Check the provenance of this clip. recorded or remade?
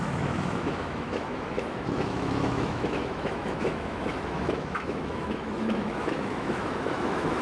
remade